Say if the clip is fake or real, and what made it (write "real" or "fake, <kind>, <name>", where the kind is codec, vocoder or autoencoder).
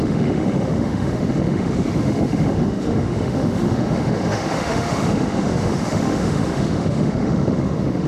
fake, autoencoder, DAC-VAE